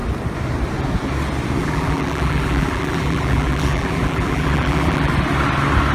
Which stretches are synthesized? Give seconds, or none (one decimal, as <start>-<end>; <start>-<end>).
1.6-5.1